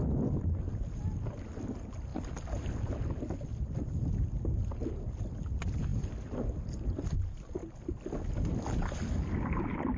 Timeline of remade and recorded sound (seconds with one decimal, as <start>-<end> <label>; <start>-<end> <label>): 0.0-10.0 recorded